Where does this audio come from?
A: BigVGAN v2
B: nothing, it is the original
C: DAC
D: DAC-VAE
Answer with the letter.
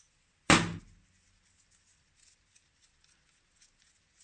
B